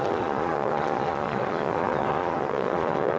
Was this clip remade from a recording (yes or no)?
yes